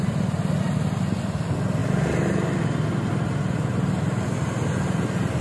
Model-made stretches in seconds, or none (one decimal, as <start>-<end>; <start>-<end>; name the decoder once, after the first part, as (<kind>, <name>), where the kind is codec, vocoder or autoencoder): none